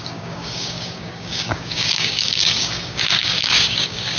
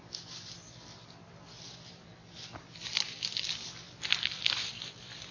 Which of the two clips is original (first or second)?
second